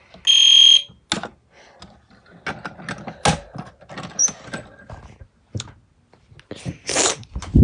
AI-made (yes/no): no